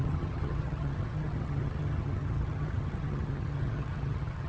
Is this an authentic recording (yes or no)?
no